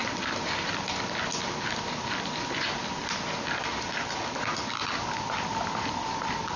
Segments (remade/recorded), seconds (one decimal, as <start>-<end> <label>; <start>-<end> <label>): 0.0-6.6 recorded